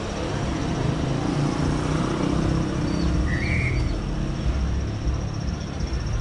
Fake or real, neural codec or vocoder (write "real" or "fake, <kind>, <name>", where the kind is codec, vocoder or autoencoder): real